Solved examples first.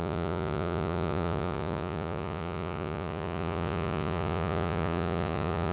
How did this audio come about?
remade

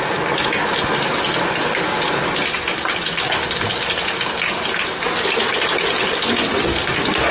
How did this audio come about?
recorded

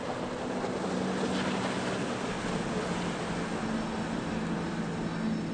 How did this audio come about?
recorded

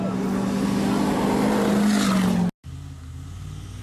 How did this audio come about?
recorded